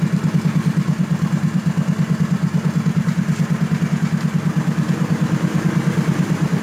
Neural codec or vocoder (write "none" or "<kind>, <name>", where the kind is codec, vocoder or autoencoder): none